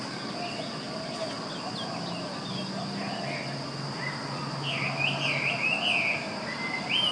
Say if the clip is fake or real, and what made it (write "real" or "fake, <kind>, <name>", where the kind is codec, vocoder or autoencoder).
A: real